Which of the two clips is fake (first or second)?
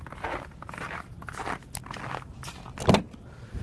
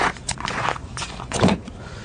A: second